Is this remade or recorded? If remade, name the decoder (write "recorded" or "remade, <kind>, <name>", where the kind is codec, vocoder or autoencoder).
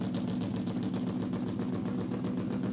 recorded